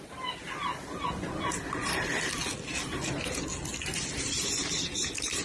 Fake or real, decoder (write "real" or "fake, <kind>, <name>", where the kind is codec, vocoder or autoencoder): real